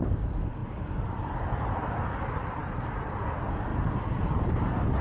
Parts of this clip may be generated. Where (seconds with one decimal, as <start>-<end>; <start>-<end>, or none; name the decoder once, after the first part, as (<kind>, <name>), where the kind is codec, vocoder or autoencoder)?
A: none